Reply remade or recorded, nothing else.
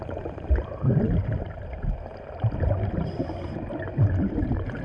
remade